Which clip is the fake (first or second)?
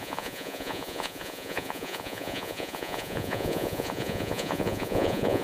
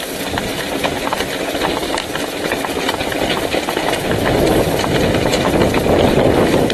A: first